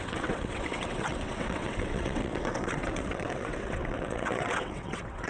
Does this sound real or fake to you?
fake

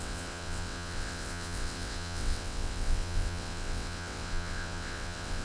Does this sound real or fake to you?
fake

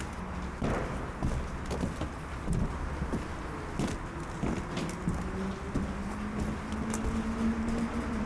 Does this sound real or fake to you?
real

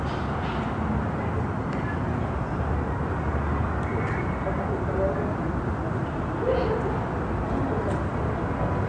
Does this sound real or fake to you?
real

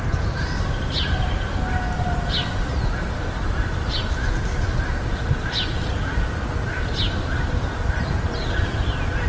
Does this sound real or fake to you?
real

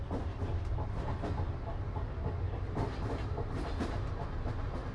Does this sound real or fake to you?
real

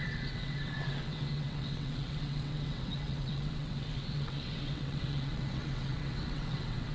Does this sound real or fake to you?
fake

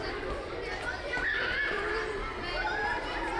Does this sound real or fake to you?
real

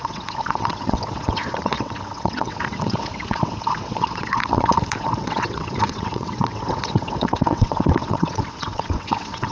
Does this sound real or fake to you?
fake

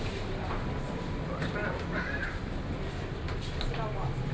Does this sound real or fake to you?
real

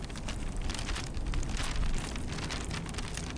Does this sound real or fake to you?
real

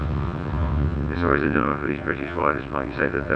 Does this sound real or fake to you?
fake